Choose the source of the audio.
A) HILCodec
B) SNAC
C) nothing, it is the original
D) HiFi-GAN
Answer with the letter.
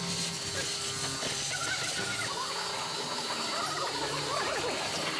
C